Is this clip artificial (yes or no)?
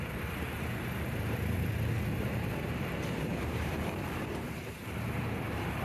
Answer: yes